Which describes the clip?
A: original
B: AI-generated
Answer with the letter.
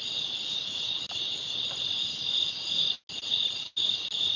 A